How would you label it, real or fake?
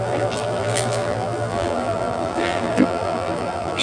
fake